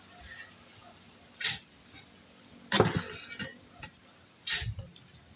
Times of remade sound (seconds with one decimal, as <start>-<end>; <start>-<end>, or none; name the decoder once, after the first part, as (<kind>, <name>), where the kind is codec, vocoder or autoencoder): 0.8-2.5 (vocoder, BigVGAN v2); 3.5-4.8